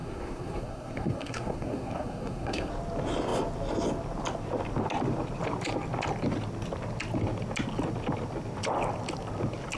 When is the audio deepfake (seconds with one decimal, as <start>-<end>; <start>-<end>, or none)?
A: 0.0-2.7

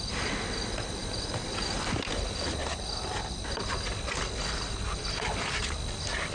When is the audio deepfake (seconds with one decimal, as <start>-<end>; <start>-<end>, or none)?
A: none

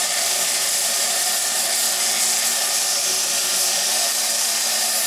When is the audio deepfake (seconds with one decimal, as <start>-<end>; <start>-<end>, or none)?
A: 0.0-1.8; 2.5-3.5; 4.1-5.1

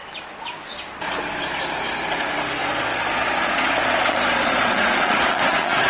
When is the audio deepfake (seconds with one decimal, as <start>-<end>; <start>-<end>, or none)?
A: 2.6-5.9

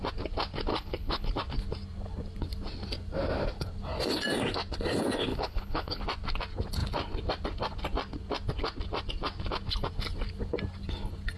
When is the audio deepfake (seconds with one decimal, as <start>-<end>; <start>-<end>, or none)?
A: 0.7-1.3; 5.3-6.0